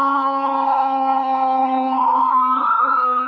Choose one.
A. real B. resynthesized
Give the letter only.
B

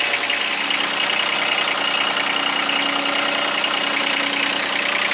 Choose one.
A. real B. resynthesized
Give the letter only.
A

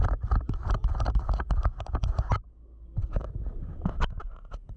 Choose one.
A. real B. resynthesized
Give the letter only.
A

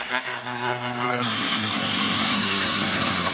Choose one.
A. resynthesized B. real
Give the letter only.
A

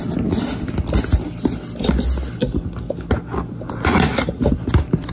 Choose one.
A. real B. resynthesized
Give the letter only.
A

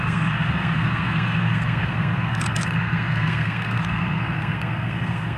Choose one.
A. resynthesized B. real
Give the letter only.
A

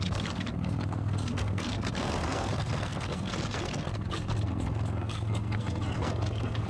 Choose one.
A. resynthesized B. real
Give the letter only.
A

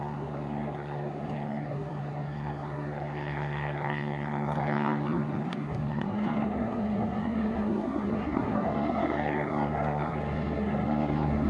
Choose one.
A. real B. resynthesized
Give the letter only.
B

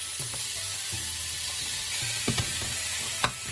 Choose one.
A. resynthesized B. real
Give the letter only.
B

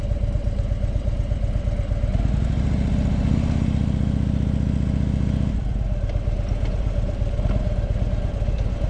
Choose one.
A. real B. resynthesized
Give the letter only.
A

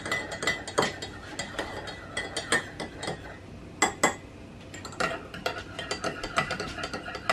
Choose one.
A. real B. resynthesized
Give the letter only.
A